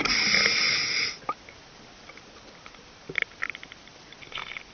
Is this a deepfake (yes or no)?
no